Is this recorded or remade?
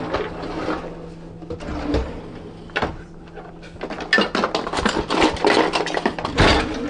recorded